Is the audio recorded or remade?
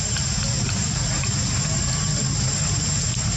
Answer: recorded